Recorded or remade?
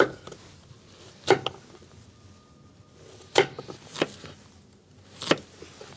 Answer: recorded